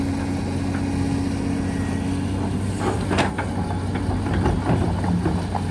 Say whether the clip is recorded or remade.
recorded